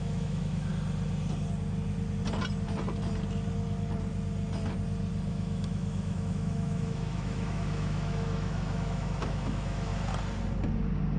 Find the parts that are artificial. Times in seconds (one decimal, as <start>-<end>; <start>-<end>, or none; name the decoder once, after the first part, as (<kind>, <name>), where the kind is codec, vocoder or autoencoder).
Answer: 0.0-0.7 (autoencoder, DAC-VAE); 5.3-9.9